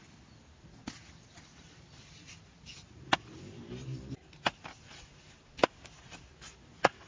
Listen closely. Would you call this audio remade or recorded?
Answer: recorded